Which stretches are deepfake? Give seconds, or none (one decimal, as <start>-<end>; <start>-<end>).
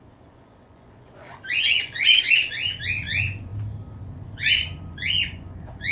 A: 0.0-3.5; 4.1-5.9